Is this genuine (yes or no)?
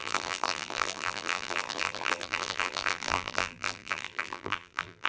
no